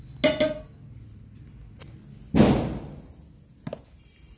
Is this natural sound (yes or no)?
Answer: yes